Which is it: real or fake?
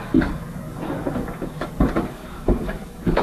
fake